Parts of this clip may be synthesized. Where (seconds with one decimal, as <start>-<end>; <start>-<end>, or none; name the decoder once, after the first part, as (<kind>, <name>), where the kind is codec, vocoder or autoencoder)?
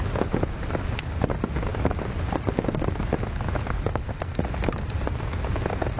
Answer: 3.9-4.4 (codec, SNAC)